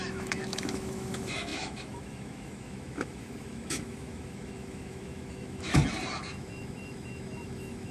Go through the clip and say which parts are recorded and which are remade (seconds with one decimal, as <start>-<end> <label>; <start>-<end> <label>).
0.0-5.8 remade; 5.8-6.3 recorded; 6.3-7.9 remade